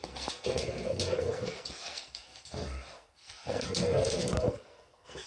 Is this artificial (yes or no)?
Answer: yes